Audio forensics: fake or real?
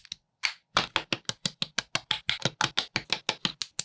real